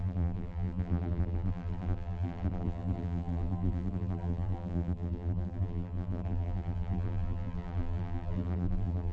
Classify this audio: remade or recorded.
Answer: remade